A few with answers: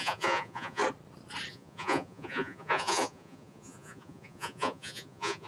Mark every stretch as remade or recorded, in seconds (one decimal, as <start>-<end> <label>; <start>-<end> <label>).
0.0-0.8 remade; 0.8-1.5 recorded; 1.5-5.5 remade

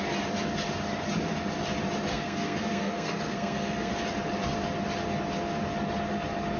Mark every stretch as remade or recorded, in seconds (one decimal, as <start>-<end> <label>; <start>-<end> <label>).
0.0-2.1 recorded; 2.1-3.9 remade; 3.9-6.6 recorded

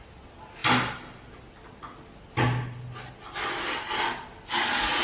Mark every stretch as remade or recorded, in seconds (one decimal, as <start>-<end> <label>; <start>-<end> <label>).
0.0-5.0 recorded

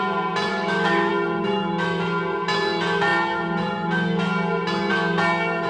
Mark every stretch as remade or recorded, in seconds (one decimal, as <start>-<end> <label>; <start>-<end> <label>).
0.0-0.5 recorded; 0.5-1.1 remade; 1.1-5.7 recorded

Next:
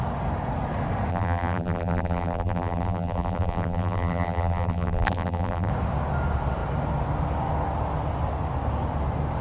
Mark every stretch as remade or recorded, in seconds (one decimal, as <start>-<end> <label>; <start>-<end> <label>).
0.0-1.1 recorded; 1.1-5.7 remade; 5.7-9.4 recorded

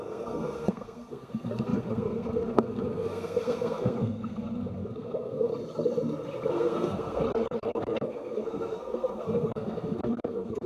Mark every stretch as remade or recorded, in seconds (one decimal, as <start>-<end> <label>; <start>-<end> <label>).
0.0-5.5 remade; 5.5-6.5 recorded; 6.5-10.7 remade

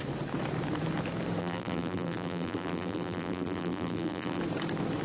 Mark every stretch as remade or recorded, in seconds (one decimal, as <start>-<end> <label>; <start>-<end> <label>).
0.0-1.4 recorded; 1.4-4.4 remade; 4.4-5.0 recorded